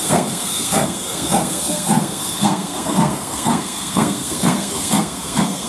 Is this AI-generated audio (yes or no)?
yes